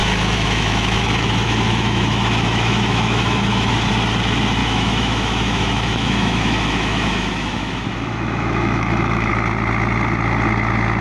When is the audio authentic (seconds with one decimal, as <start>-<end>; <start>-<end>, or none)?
3.9-4.6; 9.3-11.0